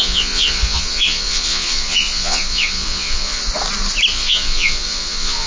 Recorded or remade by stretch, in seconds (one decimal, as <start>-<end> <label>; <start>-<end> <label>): 0.0-3.4 remade; 3.4-4.1 recorded; 4.1-5.5 remade